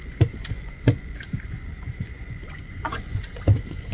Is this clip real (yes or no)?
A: no